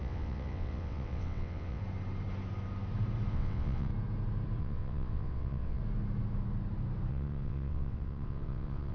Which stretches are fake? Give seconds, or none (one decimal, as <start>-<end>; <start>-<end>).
0.0-1.8; 3.3-3.9; 4.6-5.8; 7.1-8.9